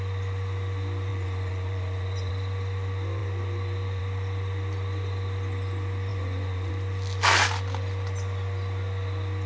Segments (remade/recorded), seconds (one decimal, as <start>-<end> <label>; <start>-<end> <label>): 0.0-1.1 recorded; 1.1-2.3 remade; 2.3-6.1 recorded; 6.1-6.7 remade; 6.7-9.5 recorded

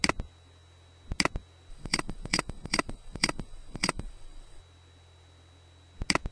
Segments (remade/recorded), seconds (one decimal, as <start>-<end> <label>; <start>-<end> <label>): 0.0-1.7 recorded; 1.7-4.6 remade; 4.6-6.3 recorded

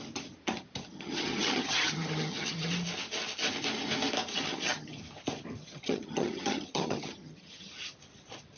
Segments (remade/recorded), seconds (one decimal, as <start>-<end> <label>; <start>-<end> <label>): 0.0-0.9 recorded; 0.9-2.7 remade; 2.7-4.3 recorded; 4.3-5.0 remade; 5.0-5.6 recorded; 5.6-7.7 remade; 7.7-8.6 recorded

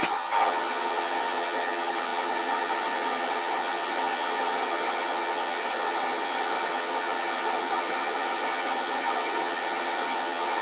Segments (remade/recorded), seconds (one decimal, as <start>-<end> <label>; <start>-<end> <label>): 0.0-10.6 remade

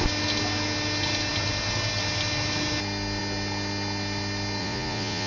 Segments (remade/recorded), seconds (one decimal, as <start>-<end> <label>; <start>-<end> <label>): 0.0-4.6 recorded; 4.6-5.3 remade